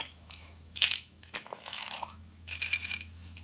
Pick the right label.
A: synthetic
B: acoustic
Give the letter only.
A